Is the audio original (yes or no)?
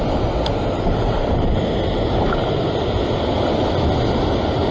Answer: yes